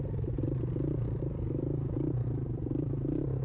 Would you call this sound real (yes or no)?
no